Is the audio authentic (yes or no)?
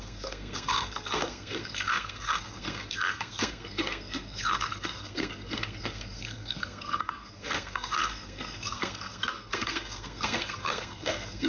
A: no